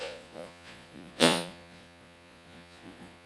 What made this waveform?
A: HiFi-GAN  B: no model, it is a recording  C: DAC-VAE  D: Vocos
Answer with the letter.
D